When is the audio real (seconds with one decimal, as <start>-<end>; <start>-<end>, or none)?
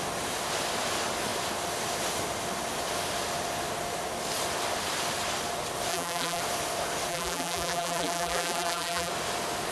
0.0-5.9; 6.4-7.1; 9.1-9.7